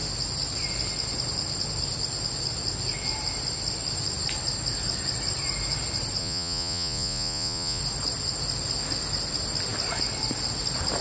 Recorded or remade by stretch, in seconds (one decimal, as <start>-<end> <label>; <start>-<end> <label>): 0.0-6.2 recorded; 6.2-7.8 remade; 7.8-11.0 recorded